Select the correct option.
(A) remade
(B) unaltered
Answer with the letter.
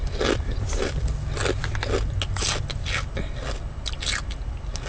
B